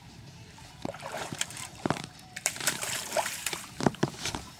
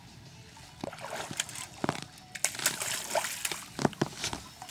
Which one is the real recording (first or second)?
second